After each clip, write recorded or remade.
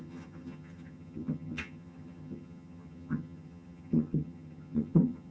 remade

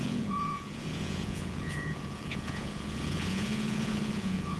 remade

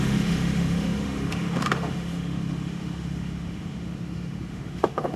remade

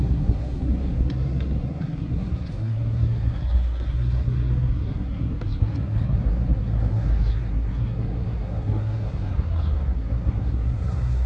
remade